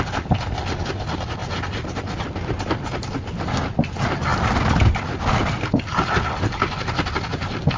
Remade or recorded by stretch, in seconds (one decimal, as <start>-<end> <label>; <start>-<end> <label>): 0.0-7.8 recorded